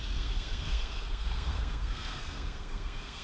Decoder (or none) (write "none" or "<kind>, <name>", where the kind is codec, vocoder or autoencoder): codec, SNAC